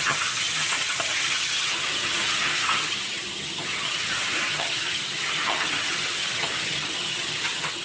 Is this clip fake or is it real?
fake